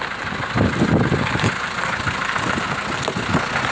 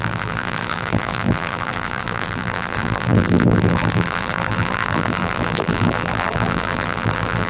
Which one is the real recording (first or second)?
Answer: first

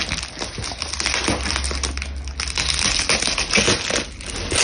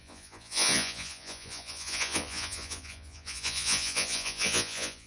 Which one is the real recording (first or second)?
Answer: first